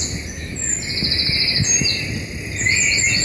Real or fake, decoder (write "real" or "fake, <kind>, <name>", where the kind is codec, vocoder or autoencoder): real